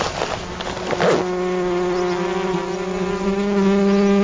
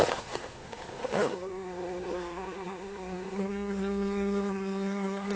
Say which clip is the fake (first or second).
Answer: second